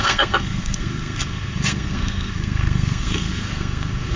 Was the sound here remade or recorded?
remade